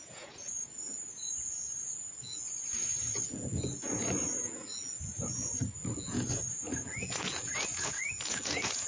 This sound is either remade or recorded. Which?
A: remade